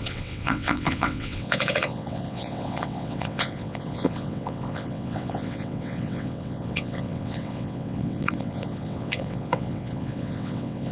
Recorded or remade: remade